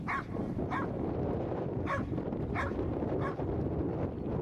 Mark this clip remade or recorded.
recorded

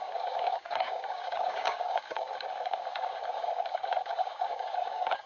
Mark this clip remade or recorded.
remade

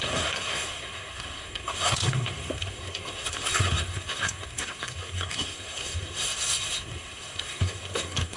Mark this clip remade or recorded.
remade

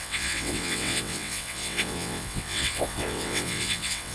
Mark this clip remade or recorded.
remade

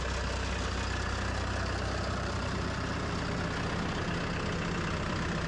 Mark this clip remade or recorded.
recorded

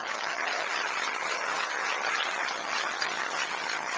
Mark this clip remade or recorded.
remade